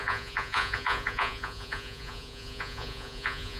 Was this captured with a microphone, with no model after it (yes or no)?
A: no